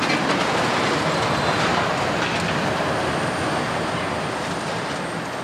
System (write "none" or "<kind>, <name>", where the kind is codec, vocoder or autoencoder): none